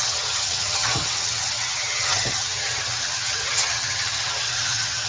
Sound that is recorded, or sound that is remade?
remade